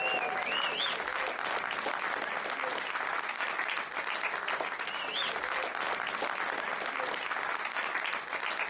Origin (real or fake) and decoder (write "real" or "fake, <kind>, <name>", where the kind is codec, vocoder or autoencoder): real